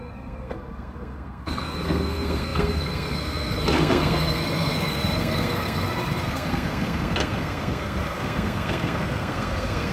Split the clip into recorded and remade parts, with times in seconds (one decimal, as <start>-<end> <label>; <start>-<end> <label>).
0.0-9.9 remade